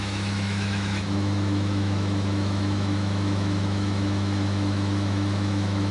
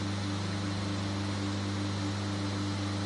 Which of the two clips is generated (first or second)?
first